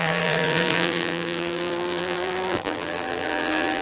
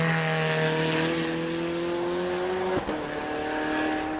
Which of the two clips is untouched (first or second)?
second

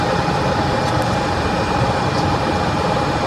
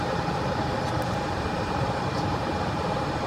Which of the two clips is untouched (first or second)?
first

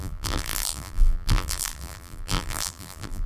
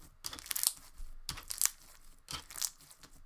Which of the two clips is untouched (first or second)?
second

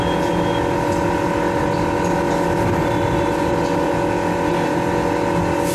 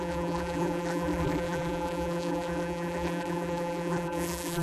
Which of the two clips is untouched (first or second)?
first